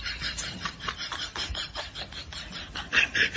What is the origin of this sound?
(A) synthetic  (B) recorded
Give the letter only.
A